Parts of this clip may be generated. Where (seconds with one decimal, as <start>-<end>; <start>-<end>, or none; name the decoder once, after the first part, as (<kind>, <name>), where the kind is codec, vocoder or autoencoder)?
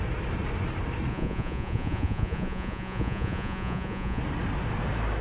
1.1-4.2 (vocoder, Vocos)